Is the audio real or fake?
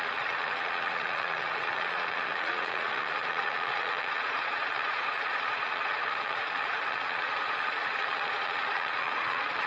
fake